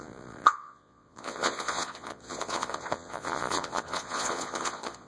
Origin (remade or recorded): remade